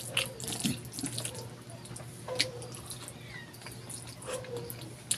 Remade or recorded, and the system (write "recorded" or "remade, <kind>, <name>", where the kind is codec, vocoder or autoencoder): recorded